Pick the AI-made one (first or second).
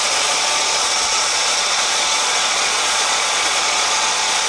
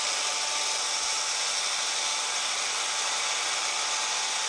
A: first